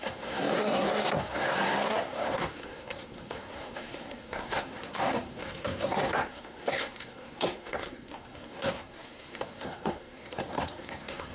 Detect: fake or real fake